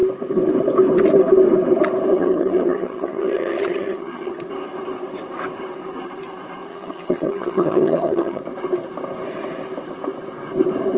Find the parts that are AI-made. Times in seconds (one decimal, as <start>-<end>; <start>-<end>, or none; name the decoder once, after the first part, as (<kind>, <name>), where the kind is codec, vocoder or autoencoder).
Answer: 2.1-4.3 (vocoder, HiFi-GAN); 6.7-8.4